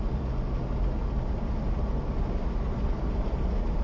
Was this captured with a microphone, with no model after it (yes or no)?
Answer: yes